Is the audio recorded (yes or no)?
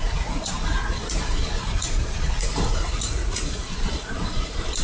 no